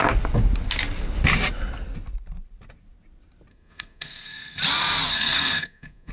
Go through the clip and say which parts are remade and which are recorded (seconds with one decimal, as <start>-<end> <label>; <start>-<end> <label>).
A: 0.0-3.5 recorded; 3.5-4.6 remade; 4.6-5.1 recorded; 5.1-6.1 remade